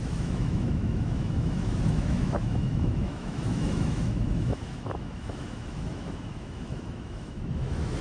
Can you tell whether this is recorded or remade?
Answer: remade